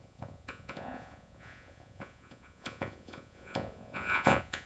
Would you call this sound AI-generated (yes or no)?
yes